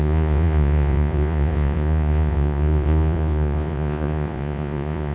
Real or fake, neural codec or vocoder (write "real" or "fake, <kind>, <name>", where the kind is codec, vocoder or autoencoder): fake, vocoder, Vocos